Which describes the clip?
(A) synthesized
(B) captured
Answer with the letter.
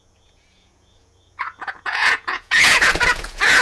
A